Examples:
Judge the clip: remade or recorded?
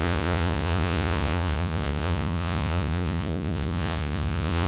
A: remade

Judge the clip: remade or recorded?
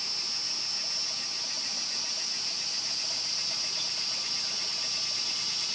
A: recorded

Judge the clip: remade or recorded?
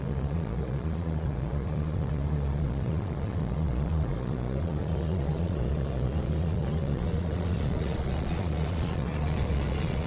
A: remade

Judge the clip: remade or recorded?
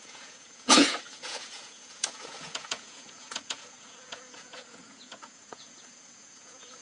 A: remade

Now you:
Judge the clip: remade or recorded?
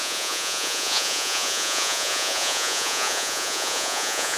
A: remade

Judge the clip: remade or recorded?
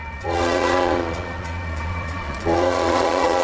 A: remade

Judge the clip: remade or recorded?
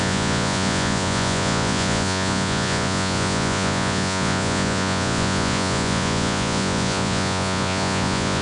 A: remade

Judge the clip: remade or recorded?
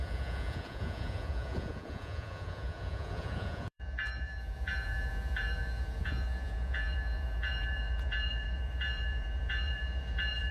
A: remade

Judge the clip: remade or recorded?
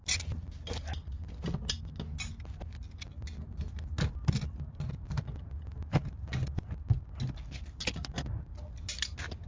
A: recorded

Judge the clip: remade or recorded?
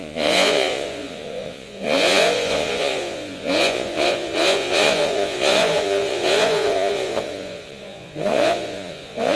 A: remade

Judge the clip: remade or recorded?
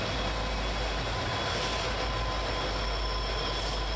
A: recorded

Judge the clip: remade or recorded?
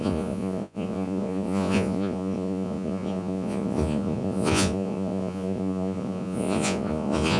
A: remade